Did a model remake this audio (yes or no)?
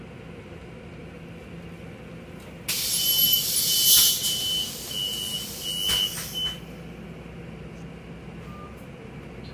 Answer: no